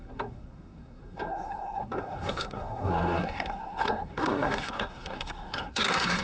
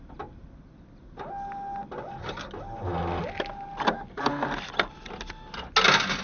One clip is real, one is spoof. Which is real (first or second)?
second